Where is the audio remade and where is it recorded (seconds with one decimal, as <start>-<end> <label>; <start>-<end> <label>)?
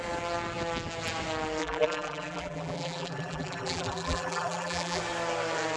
0.0-1.6 recorded; 1.6-5.0 remade; 5.0-5.8 recorded